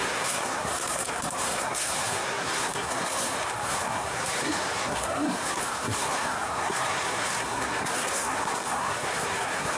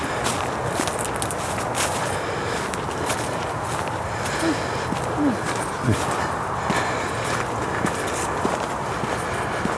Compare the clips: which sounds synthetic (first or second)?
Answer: first